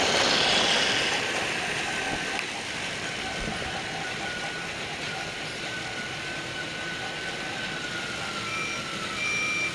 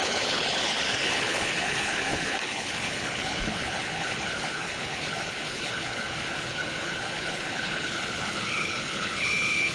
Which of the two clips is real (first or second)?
first